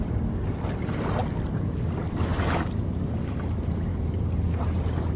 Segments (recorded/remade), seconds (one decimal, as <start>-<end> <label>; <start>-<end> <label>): 0.0-3.9 recorded; 3.9-4.6 remade; 4.6-5.2 recorded

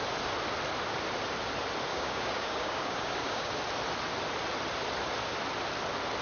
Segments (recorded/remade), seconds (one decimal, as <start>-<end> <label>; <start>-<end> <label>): 0.0-1.9 recorded; 1.9-3.5 remade; 3.5-6.2 recorded

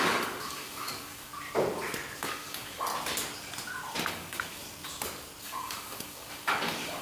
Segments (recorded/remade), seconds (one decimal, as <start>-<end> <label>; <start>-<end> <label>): 0.0-1.3 remade; 1.3-2.2 recorded; 2.2-2.9 remade; 2.9-4.1 recorded; 4.1-4.6 remade; 4.6-5.4 recorded; 5.4-7.0 remade